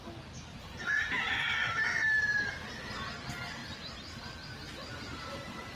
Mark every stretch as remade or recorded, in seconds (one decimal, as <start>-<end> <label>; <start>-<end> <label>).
0.0-5.8 recorded